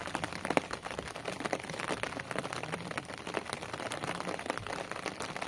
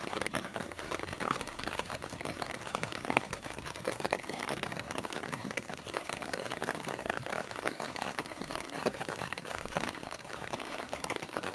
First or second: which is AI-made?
second